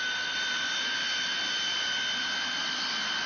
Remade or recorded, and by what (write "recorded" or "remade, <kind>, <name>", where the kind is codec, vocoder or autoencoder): recorded